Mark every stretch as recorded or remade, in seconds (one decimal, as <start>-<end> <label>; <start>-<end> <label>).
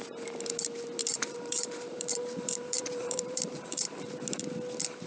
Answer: 0.0-1.0 recorded; 1.0-4.1 remade; 4.1-5.1 recorded